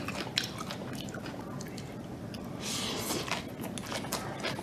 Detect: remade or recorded recorded